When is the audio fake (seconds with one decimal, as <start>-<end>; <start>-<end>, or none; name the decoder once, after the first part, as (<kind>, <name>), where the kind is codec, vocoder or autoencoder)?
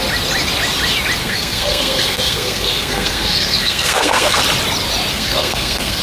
1.2-4.4 (codec, SNAC); 5.1-6.0